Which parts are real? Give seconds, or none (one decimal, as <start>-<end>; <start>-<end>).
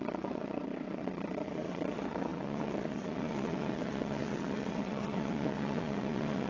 none